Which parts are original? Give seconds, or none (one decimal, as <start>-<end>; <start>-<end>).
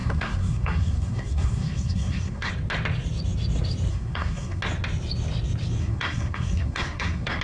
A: 2.5-3.9; 4.6-5.8